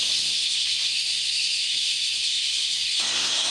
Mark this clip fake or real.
fake